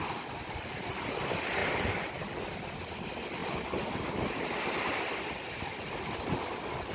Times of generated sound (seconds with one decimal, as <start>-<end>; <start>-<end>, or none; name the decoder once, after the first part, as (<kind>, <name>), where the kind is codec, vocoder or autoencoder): none